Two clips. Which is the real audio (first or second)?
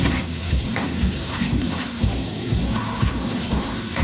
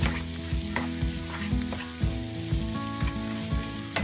second